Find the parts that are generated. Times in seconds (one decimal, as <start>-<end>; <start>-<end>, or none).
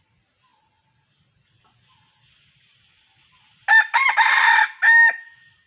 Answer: 0.0-0.5; 3.9-4.8